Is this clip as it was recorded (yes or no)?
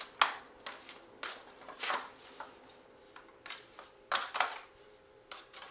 yes